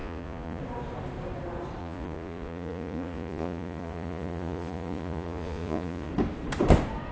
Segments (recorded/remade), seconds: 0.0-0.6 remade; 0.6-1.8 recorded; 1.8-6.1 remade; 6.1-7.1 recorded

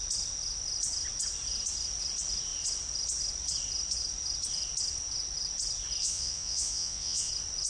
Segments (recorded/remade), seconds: 0.0-6.0 recorded; 6.0-7.3 remade; 7.3-7.7 recorded

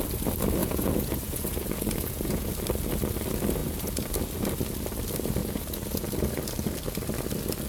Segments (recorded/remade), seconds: 0.0-0.6 recorded; 0.6-2.5 remade; 2.5-3.6 recorded; 3.6-4.1 remade; 4.1-5.4 recorded; 5.4-6.1 remade; 6.1-7.7 recorded

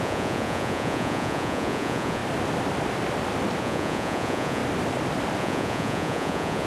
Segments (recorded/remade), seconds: 0.0-2.2 remade; 2.2-3.6 recorded; 3.6-4.6 remade; 4.6-5.4 recorded; 5.4-6.7 remade